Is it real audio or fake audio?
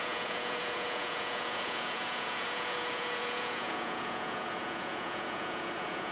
fake